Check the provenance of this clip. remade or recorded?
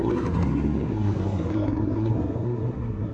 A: remade